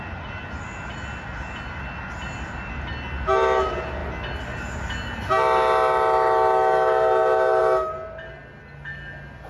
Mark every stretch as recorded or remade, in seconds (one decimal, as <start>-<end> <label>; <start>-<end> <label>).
0.0-9.5 recorded